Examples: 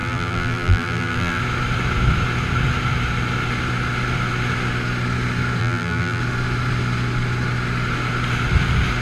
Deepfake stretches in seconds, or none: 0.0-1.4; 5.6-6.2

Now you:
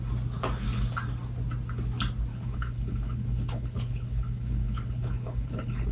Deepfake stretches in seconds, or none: 2.3-5.9